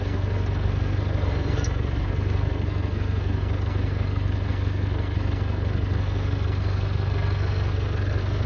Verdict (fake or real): fake